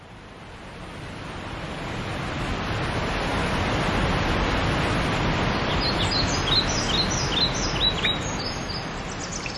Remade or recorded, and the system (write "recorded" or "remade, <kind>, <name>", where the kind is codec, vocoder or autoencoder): recorded